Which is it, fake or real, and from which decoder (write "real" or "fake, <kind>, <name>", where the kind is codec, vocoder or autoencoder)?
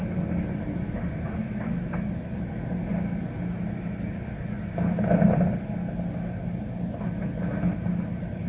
real